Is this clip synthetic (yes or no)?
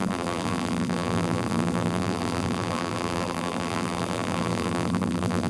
yes